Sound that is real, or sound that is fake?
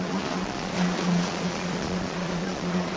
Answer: fake